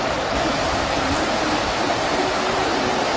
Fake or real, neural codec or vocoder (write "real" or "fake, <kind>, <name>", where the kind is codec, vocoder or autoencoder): real